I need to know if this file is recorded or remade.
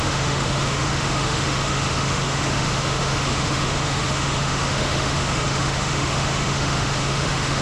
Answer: remade